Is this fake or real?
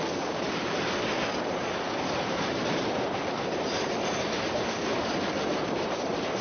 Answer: fake